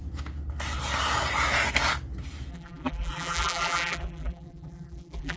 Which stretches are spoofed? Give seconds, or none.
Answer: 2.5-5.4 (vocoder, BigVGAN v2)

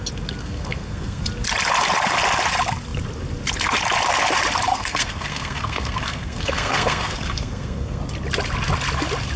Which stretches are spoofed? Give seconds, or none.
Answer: 0.4-1.2 (codec, SNAC); 4.7-8.0

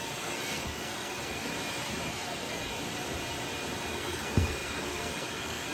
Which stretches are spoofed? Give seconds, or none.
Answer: 0.0-1.5 (codec, SNAC); 2.1-2.7; 3.9-5.7